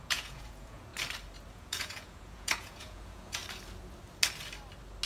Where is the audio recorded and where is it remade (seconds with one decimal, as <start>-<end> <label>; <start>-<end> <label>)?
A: 0.0-0.9 remade; 0.9-1.5 recorded; 1.5-3.4 remade; 3.4-5.1 recorded